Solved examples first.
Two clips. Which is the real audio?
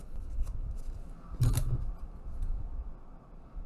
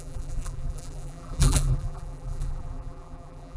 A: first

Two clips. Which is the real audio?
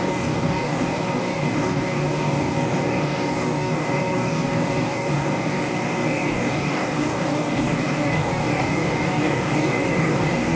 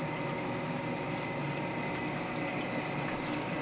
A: second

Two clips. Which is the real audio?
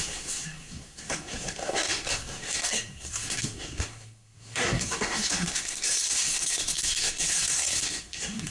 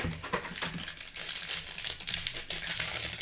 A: second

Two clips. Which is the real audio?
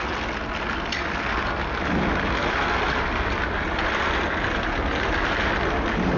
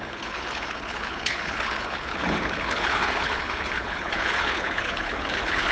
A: first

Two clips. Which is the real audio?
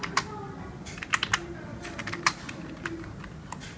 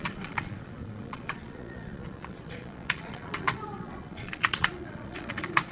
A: first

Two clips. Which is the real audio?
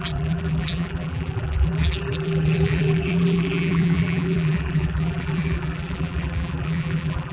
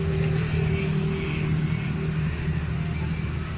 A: second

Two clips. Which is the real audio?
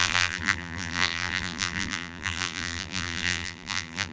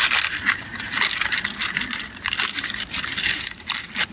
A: second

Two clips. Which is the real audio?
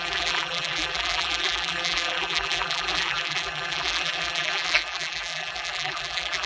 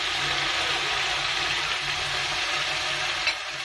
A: second